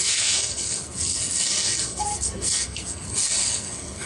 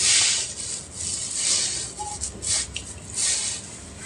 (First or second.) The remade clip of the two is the first